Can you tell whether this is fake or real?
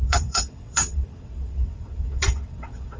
fake